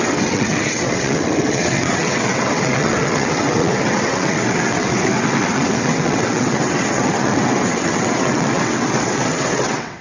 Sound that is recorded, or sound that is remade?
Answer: remade